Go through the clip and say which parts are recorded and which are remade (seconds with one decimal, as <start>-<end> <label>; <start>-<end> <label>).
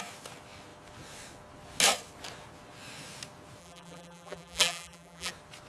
0.0-3.6 recorded; 3.6-5.3 remade; 5.3-5.7 recorded